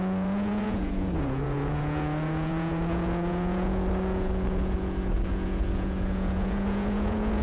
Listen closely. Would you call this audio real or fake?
fake